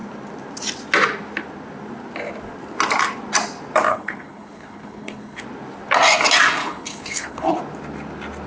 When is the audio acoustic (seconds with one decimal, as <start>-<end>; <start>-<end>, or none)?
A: 0.0-3.9; 5.4-6.6; 7.6-8.5